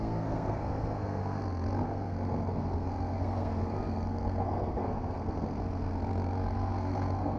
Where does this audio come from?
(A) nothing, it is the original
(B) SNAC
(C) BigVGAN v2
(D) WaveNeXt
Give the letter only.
B